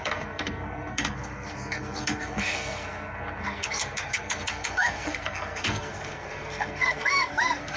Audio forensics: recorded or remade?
remade